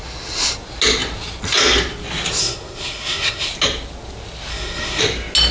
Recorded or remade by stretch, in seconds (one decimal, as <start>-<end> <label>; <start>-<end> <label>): 0.0-2.4 recorded; 2.4-3.5 remade; 3.5-4.5 recorded; 4.5-5.0 remade; 5.0-5.5 recorded